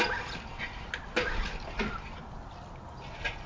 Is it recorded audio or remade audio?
recorded